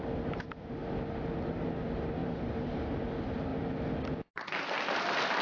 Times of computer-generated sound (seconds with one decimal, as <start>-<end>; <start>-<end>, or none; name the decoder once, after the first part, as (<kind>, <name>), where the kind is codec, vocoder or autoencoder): 2.2-3.1 (vocoder, BigVGAN v2); 3.5-5.0